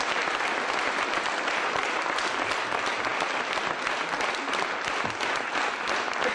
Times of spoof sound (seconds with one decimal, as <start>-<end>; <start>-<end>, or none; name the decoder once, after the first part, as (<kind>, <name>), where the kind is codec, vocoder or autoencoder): none